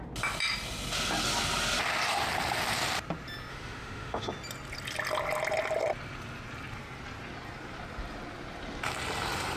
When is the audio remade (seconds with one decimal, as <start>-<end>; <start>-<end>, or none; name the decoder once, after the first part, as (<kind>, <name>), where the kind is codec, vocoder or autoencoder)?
3.5-4.3 (autoencoder, DAC-VAE)